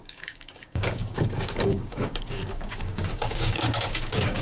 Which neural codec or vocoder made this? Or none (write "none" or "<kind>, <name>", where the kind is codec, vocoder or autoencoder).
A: codec, DAC